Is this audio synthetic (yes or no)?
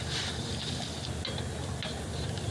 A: no